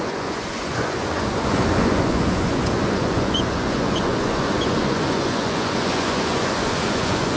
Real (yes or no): no